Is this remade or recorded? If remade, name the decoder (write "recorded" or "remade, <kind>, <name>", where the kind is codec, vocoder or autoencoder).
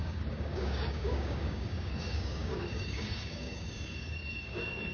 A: remade, codec, DAC